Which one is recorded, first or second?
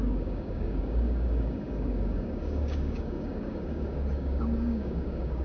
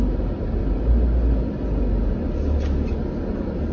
second